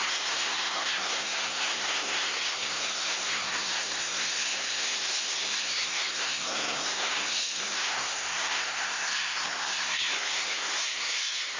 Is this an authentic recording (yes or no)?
no